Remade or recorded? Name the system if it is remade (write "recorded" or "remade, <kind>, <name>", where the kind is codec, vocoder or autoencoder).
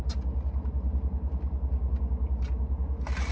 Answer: recorded